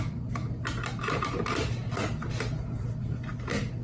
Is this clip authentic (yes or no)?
yes